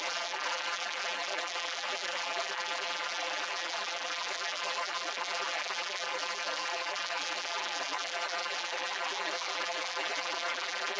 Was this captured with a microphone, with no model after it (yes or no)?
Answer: no